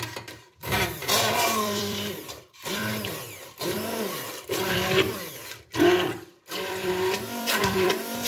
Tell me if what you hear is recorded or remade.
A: remade